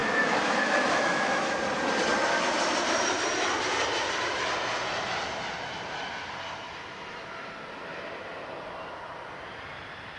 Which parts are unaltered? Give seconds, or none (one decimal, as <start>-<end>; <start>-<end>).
1.5-10.2